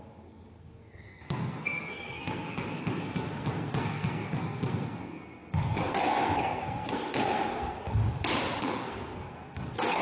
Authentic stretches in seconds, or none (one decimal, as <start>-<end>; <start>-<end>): 8.0-8.6